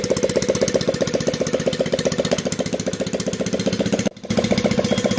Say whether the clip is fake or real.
real